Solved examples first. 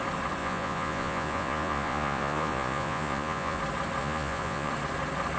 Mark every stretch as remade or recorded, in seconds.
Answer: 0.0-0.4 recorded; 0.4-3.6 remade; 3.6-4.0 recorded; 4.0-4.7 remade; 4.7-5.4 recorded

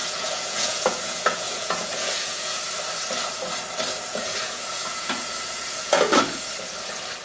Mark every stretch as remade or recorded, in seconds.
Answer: 0.0-2.6 remade; 2.6-4.1 recorded; 4.1-6.1 remade; 6.1-7.2 recorded

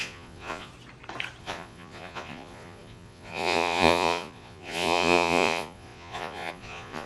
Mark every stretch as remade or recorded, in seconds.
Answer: 0.0-0.7 remade; 0.7-1.4 recorded; 1.4-7.1 remade

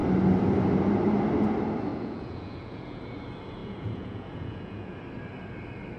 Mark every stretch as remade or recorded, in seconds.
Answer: 0.0-1.9 recorded; 1.9-3.0 remade; 3.0-3.6 recorded; 3.6-5.0 remade; 5.0-6.0 recorded

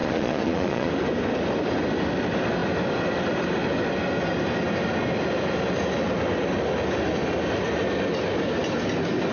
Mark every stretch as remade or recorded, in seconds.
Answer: 0.0-0.9 remade; 0.9-9.3 recorded